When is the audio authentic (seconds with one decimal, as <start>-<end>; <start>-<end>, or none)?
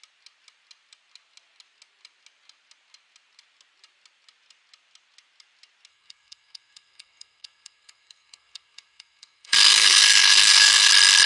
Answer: 0.0-5.9; 10.9-11.3